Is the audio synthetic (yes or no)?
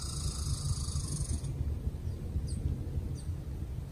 no